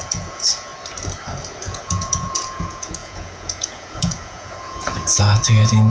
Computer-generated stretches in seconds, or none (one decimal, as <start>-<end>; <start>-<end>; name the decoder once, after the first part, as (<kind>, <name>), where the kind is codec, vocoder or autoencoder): 0.0-0.7 (vocoder, Vocos); 1.6-5.9